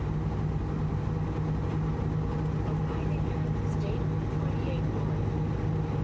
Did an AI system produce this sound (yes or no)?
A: no